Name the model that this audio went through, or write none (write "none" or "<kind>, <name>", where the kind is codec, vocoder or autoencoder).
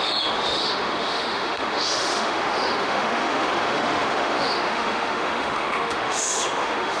autoencoder, DAC-VAE